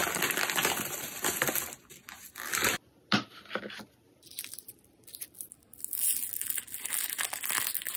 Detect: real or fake real